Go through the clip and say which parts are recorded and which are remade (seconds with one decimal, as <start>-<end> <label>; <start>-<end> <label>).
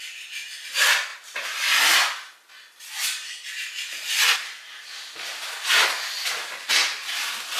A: 0.0-7.6 recorded